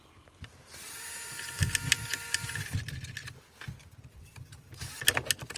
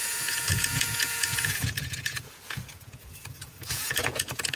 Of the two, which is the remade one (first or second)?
second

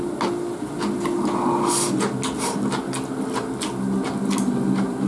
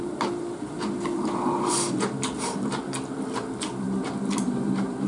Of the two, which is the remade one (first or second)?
second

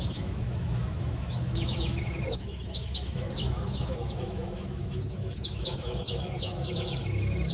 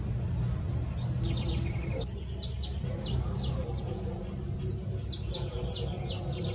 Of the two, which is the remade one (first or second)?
first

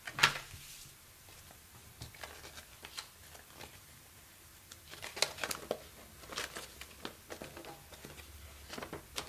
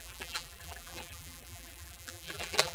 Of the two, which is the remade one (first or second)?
second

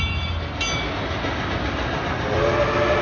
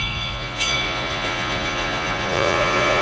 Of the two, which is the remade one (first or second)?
second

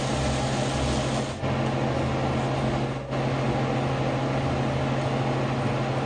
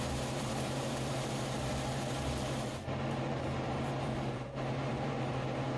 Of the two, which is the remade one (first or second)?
second